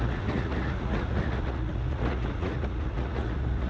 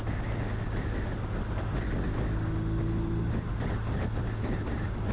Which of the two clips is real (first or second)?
second